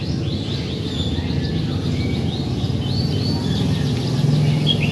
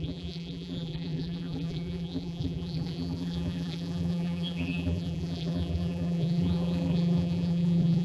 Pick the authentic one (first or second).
first